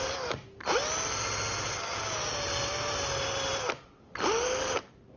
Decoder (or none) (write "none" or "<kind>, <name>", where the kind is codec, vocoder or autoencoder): none